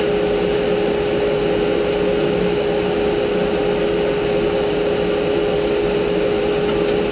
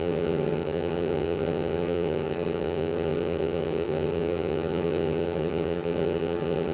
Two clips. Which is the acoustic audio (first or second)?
first